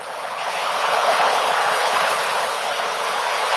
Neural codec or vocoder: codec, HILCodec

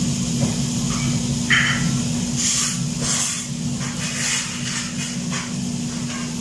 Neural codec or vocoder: none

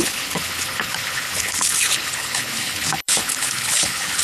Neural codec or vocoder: codec, HILCodec